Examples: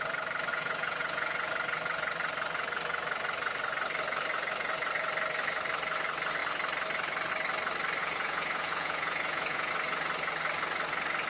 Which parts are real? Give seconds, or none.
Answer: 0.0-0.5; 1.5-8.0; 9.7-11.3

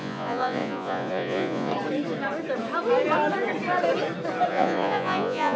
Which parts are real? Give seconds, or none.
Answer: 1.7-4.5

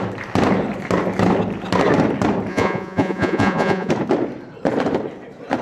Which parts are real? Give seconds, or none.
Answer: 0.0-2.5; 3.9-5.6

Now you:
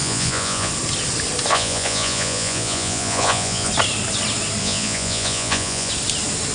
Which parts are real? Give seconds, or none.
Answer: 0.7-1.5; 3.7-4.6; 5.9-6.5

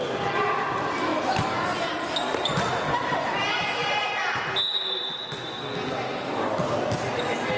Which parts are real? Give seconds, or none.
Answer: 0.0-7.6

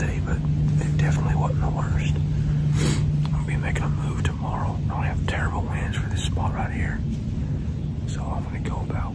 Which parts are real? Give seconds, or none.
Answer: 0.0-9.1

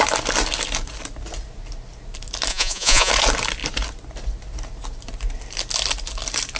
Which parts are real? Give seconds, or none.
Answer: 0.0-2.5; 3.1-6.6